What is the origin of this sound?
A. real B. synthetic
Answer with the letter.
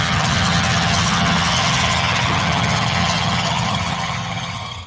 B